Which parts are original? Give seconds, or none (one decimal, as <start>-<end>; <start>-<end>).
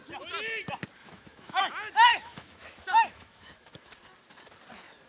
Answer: 0.0-1.0; 1.6-2.1; 4.0-5.1